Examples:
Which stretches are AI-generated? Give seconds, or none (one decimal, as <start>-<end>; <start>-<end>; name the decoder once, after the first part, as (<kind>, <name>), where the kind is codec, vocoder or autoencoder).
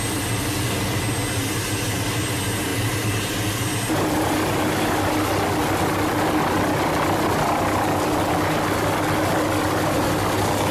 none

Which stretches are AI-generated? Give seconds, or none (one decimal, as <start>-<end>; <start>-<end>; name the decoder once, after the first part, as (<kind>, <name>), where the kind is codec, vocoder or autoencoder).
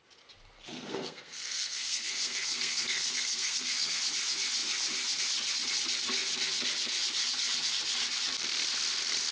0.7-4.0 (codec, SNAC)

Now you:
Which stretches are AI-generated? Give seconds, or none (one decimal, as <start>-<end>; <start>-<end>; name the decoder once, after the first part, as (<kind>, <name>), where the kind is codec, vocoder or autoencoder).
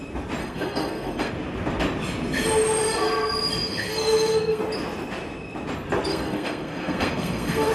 0.4-1.3 (codec, SNAC); 3.7-4.6; 6.1-7.7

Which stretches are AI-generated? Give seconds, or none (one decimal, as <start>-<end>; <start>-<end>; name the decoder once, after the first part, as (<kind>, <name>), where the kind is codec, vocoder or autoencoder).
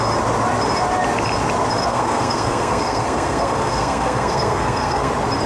1.8-5.1 (codec, SNAC)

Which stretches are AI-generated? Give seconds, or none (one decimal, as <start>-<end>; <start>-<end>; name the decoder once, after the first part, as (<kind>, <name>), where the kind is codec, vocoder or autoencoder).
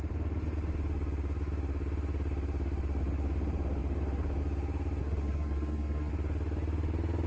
5.0-6.1 (codec, SNAC)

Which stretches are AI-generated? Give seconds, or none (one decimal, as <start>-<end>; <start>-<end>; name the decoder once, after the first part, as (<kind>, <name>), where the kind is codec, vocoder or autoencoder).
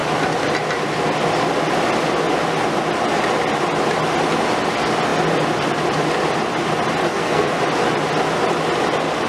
7.0-7.6 (codec, SNAC)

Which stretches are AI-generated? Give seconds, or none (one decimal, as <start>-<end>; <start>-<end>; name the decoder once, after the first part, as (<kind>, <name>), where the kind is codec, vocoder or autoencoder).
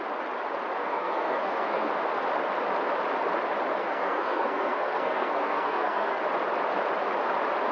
0.8-1.9 (codec, SNAC); 3.8-6.2